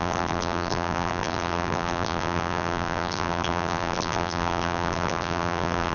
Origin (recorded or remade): remade